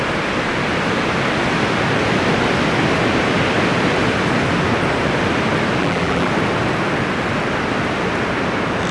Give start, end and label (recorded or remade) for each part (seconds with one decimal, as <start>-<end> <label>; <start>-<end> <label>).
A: 0.0-5.8 recorded; 5.8-6.3 remade; 6.3-8.9 recorded